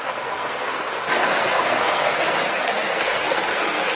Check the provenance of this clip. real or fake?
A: fake